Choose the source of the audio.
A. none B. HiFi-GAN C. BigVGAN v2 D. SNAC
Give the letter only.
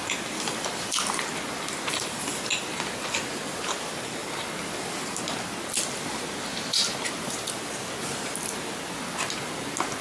A